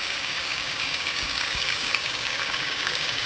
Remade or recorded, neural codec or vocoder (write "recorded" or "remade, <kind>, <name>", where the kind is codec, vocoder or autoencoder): remade, codec, DAC